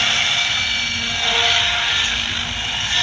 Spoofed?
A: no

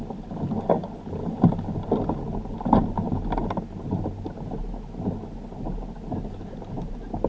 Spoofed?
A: no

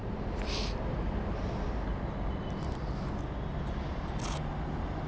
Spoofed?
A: no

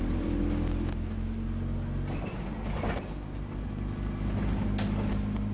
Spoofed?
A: no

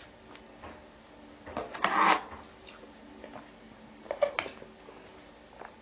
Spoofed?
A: no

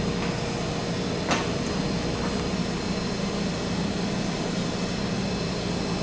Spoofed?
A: no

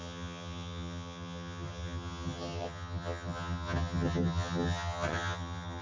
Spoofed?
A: yes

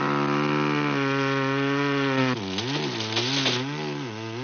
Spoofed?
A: no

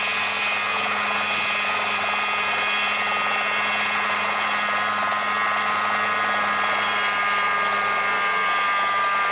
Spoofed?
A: no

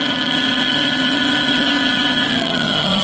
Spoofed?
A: yes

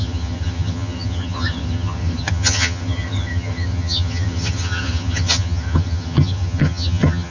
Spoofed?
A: yes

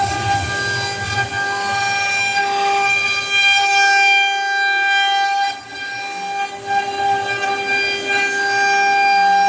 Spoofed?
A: no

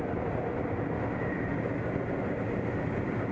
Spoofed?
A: no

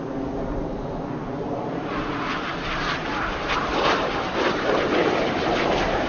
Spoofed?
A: no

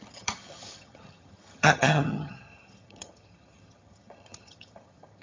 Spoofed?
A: yes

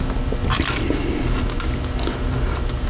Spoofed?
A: no